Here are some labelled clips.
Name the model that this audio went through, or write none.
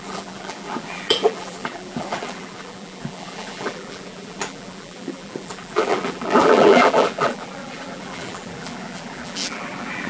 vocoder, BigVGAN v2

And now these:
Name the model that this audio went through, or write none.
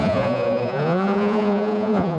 vocoder, Vocos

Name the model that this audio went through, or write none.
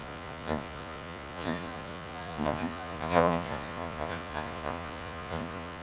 vocoder, Vocos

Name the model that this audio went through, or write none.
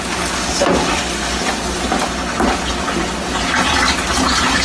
none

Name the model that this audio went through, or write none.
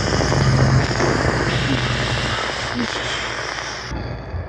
none